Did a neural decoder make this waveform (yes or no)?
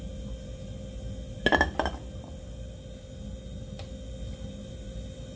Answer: no